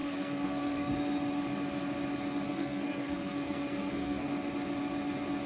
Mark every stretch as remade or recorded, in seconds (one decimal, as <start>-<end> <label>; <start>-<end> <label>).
0.0-0.9 remade; 0.9-2.5 recorded; 2.5-4.3 remade; 4.3-5.5 recorded